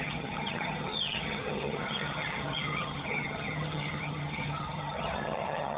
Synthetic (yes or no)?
yes